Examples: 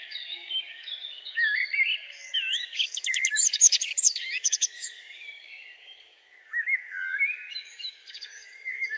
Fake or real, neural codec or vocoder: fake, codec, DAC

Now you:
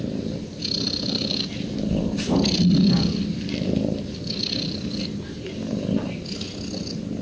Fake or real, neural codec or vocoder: real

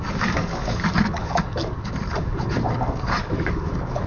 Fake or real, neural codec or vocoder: fake, codec, DAC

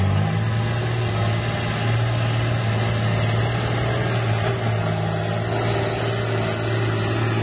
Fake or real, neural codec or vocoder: real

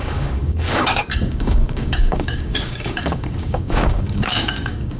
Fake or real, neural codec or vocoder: fake, codec, DAC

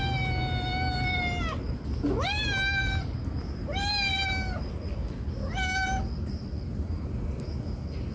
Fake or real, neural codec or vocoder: real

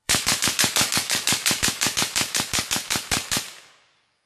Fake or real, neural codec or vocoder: fake, codec, DAC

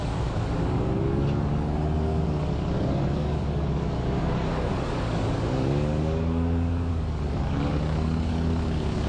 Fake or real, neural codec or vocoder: fake, codec, DAC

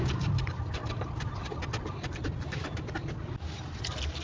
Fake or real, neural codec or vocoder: real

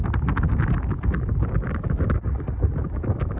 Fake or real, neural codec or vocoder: real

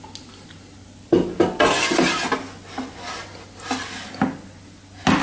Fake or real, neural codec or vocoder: real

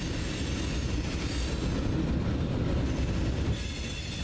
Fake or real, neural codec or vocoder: real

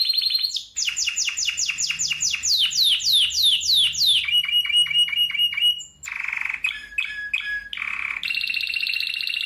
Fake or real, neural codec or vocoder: real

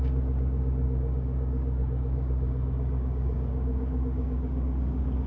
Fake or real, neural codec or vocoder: fake, codec, DAC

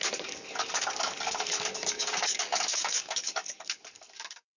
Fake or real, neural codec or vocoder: fake, codec, DAC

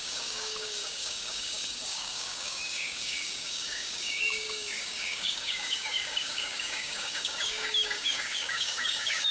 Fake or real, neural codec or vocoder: fake, codec, DAC